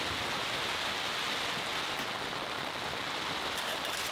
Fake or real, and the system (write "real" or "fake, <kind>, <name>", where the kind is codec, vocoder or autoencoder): real